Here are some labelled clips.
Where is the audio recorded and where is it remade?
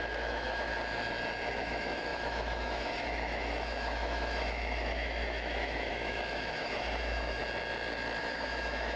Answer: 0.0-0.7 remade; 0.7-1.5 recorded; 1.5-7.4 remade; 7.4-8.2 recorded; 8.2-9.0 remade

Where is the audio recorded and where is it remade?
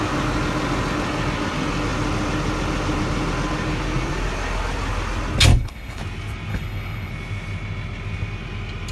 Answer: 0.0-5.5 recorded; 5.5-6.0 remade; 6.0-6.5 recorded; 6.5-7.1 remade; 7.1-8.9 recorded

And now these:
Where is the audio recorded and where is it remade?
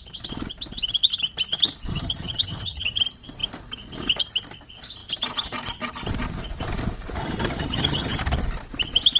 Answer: 0.0-1.9 recorded; 1.9-3.0 remade; 3.0-7.2 recorded; 7.2-8.2 remade; 8.2-9.2 recorded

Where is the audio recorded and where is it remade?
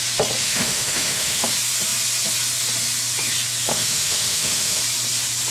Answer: 0.0-0.4 recorded; 0.4-1.5 remade; 1.5-3.7 recorded; 3.7-4.8 remade; 4.8-5.5 recorded